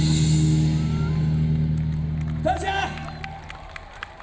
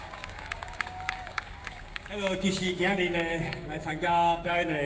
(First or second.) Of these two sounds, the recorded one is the first